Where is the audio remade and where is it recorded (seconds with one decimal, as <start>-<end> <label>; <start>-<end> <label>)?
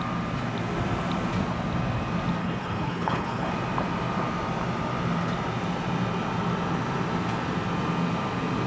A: 0.0-2.4 recorded; 2.4-3.5 remade; 3.5-8.7 recorded